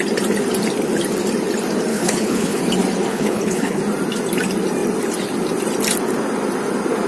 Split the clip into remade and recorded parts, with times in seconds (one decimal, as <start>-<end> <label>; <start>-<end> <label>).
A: 0.0-1.9 recorded; 1.9-2.6 remade; 2.6-3.1 recorded; 3.1-3.8 remade; 3.8-7.1 recorded